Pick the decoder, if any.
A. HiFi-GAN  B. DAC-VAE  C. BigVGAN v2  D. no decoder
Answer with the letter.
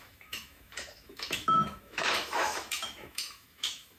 B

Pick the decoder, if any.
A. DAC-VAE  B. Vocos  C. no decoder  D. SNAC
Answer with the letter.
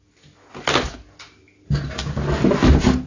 C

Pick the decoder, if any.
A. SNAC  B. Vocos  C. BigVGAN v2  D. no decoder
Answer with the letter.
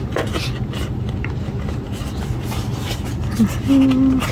D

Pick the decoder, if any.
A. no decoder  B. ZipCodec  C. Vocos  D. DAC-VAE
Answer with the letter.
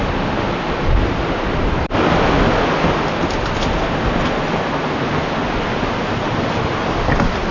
A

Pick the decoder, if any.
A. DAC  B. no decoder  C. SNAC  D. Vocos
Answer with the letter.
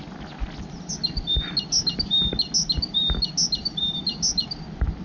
B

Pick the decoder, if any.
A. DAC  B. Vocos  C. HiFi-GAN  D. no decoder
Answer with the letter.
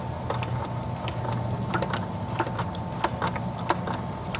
D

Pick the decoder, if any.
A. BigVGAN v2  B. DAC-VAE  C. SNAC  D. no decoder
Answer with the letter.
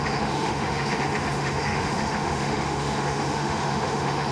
B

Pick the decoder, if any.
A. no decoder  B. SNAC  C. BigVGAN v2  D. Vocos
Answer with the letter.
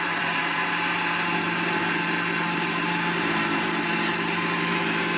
C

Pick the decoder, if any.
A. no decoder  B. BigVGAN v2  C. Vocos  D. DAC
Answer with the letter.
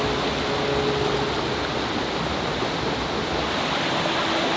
A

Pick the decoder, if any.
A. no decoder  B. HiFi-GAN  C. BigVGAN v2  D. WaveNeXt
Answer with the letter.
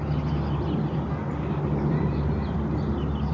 A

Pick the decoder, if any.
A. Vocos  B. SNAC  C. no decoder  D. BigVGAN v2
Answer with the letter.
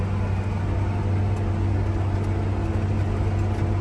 C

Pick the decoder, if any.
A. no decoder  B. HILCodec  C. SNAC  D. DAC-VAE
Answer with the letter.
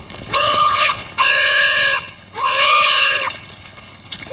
B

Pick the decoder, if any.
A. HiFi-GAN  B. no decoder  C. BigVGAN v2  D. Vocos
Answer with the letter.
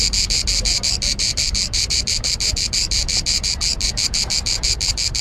C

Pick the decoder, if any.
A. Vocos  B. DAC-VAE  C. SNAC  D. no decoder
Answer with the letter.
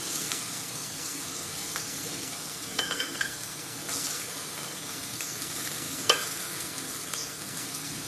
C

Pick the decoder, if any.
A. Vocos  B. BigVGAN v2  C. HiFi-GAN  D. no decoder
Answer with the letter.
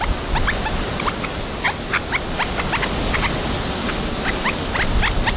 D